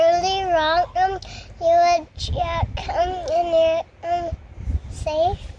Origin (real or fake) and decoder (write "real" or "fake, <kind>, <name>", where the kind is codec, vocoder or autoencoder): real